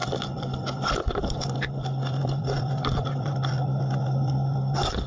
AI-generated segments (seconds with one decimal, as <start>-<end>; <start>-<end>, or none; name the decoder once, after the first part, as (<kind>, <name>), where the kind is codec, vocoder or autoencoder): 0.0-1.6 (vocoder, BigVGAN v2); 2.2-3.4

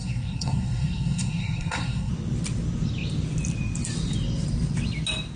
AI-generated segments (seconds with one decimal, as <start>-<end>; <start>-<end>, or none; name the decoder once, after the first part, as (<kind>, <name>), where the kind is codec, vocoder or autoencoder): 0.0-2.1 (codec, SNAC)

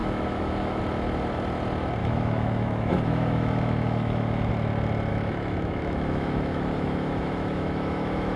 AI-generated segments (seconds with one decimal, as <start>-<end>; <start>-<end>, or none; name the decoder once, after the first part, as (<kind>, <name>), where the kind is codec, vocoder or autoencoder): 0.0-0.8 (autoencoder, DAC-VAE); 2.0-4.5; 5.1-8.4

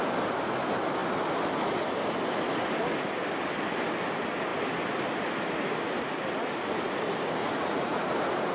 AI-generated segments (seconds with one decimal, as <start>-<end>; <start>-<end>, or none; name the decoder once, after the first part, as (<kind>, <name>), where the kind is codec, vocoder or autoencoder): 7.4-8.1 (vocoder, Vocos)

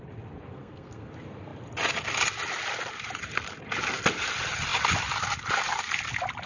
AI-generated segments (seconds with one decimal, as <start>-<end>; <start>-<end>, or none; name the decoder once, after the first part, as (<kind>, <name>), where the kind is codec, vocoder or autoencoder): 0.5-1.1 (codec, SNAC)

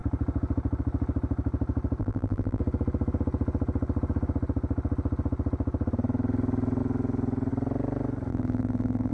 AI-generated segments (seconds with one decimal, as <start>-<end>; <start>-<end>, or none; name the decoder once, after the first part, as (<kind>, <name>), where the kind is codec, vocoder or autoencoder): 2.0-2.6 (vocoder, BigVGAN v2); 8.3-9.1

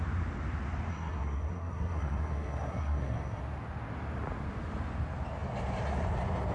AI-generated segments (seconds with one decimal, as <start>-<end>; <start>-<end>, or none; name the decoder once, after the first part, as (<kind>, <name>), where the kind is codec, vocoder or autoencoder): 0.9-3.4 (codec, SNAC)

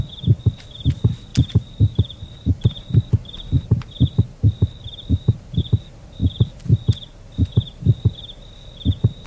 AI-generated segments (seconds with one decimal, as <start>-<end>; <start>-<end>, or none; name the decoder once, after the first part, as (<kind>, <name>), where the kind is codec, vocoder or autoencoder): none